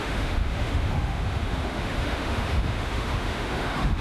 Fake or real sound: fake